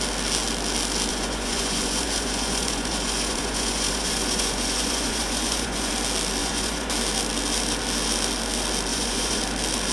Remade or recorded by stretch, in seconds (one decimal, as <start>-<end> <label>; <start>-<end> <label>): 0.0-1.1 recorded; 1.1-5.9 remade; 5.9-6.4 recorded; 6.4-6.9 remade; 6.9-8.9 recorded; 8.9-9.4 remade; 9.4-9.9 recorded